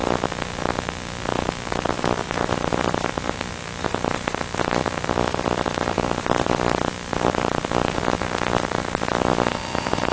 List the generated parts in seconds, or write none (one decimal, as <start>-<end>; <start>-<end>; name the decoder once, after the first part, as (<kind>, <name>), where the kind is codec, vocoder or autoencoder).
1.9-4.8 (vocoder, BigVGAN v2); 5.9-10.1